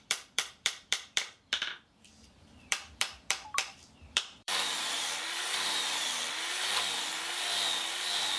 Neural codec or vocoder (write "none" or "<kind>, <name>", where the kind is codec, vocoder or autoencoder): vocoder, BigVGAN v2